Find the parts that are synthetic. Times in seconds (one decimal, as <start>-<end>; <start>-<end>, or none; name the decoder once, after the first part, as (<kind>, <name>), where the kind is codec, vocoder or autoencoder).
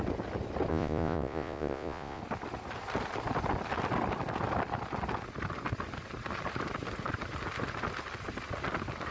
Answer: 0.7-2.2 (vocoder, Vocos)